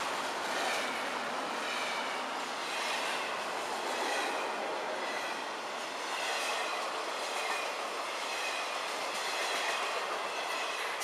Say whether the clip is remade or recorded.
recorded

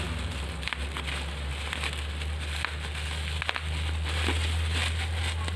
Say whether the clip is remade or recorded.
recorded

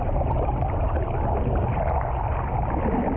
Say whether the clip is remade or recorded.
recorded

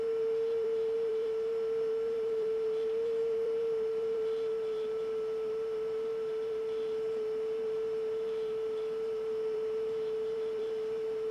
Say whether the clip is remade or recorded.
remade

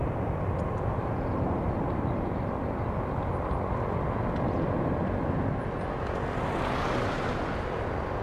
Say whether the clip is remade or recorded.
recorded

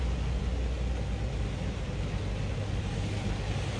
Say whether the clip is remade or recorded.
recorded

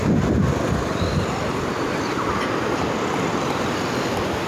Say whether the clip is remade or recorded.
recorded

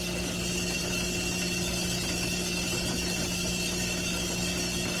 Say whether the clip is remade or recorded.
recorded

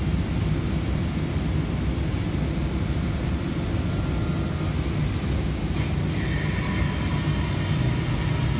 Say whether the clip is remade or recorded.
recorded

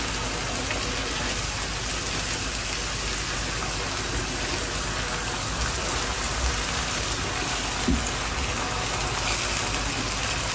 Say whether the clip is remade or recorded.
recorded